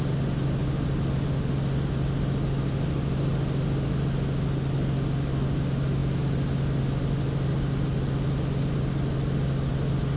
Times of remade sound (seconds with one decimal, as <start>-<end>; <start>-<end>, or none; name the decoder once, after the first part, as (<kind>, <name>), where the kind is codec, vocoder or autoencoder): none